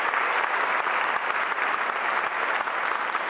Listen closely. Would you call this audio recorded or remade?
recorded